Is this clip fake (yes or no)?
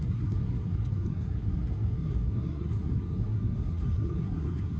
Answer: yes